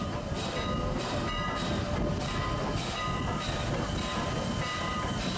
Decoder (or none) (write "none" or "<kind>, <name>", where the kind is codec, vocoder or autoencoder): none